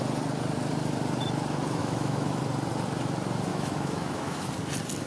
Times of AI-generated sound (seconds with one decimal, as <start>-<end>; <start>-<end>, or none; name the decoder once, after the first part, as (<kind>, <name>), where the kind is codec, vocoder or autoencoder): 1.8-2.4 (autoencoder, DAC-VAE); 3.5-4.5